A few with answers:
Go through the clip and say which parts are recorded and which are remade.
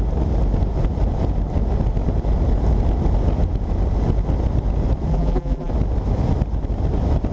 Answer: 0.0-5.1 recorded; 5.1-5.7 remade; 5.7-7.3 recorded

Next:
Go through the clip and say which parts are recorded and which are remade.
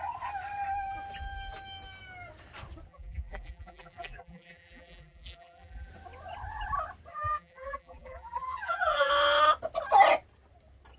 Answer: 0.0-2.9 recorded; 2.9-5.9 remade; 5.9-7.1 recorded; 7.1-9.1 remade; 9.1-11.0 recorded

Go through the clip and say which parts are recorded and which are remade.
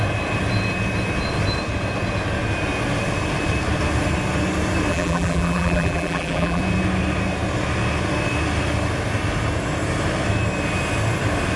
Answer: 0.0-4.9 recorded; 4.9-6.6 remade; 6.6-11.6 recorded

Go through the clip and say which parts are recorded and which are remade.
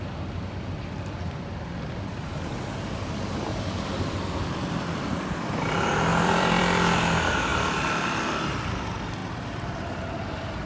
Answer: 0.0-3.5 recorded; 3.5-5.3 remade; 5.3-6.1 recorded; 6.1-6.6 remade; 6.6-7.5 recorded; 7.5-8.4 remade; 8.4-10.7 recorded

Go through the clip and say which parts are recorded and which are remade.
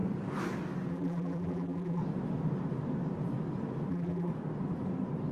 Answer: 0.0-0.9 recorded; 0.9-2.0 remade; 2.0-3.9 recorded; 3.9-4.3 remade; 4.3-5.3 recorded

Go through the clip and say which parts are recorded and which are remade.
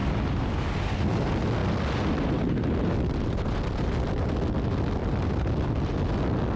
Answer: 0.0-0.6 remade; 0.6-1.6 recorded; 1.6-2.4 remade; 2.4-5.0 recorded; 5.0-5.9 remade; 5.9-6.6 recorded